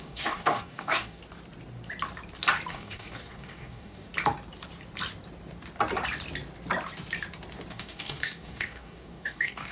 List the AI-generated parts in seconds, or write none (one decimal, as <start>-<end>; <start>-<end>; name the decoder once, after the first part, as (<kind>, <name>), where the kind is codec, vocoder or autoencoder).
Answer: 0.0-1.2 (codec, DAC); 2.7-4.1; 7.7-9.7